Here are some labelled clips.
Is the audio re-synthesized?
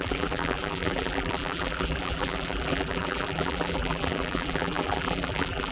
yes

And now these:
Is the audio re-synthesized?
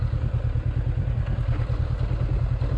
no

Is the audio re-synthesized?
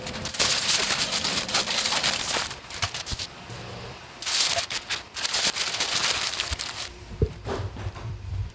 yes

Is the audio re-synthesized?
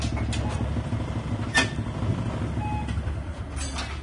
no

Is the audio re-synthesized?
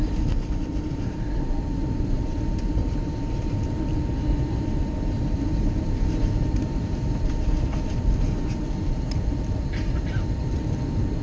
yes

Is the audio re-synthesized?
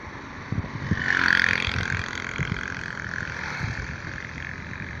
no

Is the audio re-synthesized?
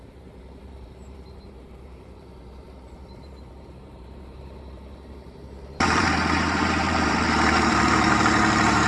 yes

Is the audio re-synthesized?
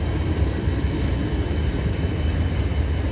no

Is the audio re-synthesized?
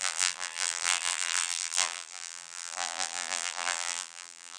yes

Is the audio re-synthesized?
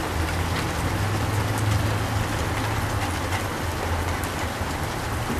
no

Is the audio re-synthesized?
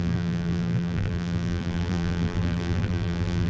yes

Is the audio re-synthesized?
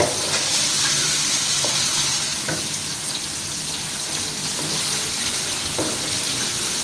no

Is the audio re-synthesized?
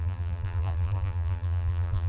yes